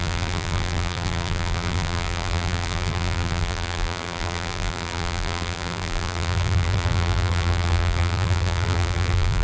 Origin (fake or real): fake